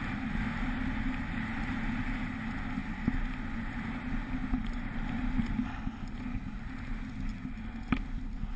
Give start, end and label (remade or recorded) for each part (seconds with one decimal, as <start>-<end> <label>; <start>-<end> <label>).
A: 0.0-8.6 recorded